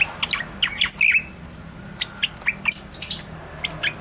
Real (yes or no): yes